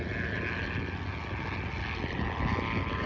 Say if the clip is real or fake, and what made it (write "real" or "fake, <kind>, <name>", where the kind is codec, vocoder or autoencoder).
real